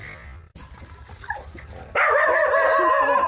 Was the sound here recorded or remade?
recorded